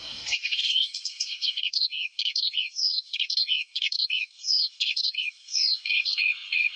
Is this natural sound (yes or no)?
no